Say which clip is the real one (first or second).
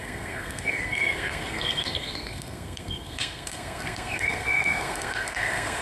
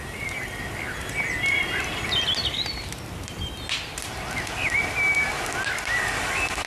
second